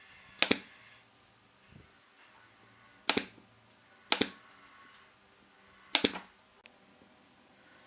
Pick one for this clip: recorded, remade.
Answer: recorded